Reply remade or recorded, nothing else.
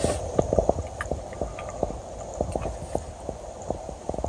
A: recorded